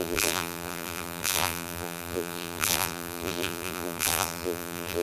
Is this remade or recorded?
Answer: remade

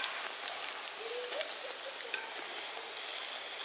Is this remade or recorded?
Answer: recorded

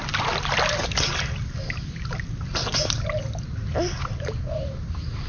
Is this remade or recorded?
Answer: recorded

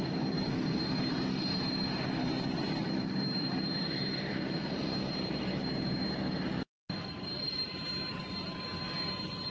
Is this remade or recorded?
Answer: recorded